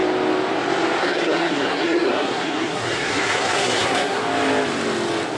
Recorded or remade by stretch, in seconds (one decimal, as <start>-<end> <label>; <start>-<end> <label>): 0.0-1.0 recorded; 1.0-4.2 remade; 4.2-5.4 recorded